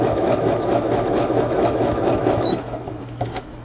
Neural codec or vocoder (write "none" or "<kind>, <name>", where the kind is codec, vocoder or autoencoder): autoencoder, DAC-VAE